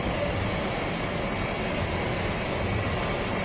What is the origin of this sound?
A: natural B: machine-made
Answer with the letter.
A